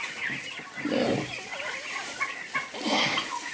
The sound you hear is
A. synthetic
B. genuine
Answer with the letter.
B